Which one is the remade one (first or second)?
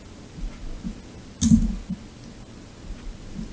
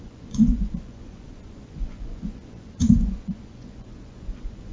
second